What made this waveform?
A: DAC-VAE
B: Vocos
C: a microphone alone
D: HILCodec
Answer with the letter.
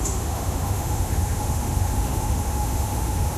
A